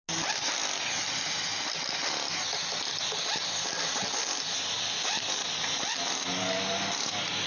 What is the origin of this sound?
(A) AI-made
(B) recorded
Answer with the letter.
B